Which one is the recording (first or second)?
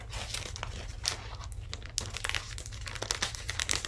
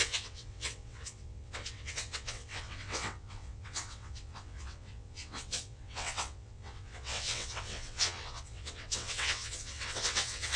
first